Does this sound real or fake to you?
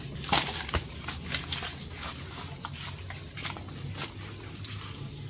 real